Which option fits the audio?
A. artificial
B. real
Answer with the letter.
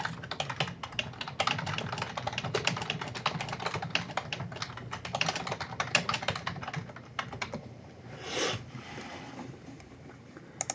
B